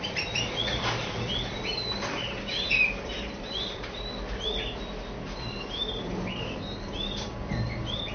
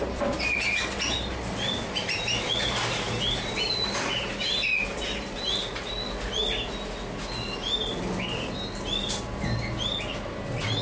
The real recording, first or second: second